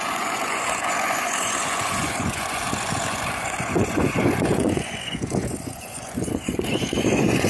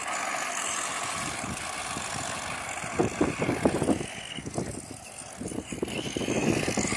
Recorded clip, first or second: second